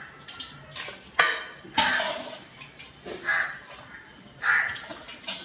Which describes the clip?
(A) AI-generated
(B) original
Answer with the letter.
B